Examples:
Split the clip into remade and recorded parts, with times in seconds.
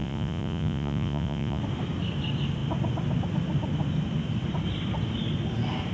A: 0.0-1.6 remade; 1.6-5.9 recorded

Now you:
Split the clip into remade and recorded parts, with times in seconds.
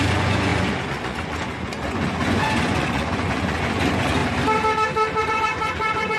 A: 0.0-4.2 remade; 4.2-5.2 recorded; 5.2-6.2 remade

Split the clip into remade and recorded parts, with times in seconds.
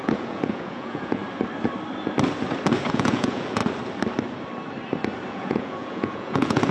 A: 0.0-1.2 remade; 1.2-2.9 recorded; 2.9-3.6 remade; 3.6-5.3 recorded; 5.3-6.7 remade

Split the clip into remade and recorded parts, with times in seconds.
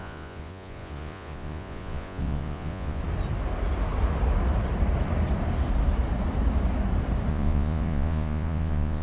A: 0.0-3.0 remade; 3.0-7.3 recorded; 7.3-9.0 remade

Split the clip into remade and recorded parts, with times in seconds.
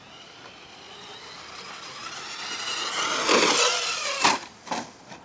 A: 0.0-5.2 recorded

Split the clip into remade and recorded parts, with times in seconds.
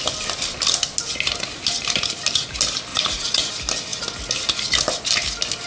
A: 0.0-2.9 recorded; 2.9-3.5 remade; 3.5-5.7 recorded